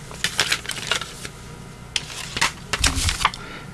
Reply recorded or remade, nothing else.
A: recorded